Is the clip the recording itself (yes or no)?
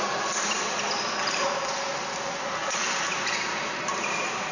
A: yes